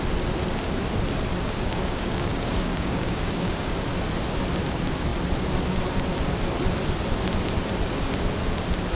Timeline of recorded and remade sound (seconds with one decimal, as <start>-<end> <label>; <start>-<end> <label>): 0.0-1.3 recorded; 1.3-3.7 remade; 3.7-9.0 recorded